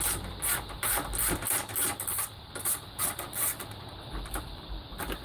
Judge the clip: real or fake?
fake